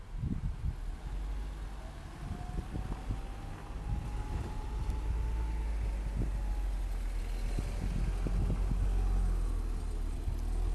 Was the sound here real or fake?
real